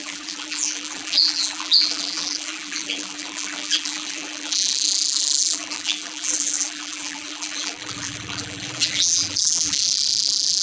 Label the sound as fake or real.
fake